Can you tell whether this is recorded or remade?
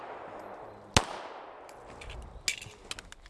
recorded